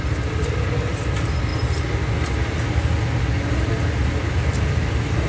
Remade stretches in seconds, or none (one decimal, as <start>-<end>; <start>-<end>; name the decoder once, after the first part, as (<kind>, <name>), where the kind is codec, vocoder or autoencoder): none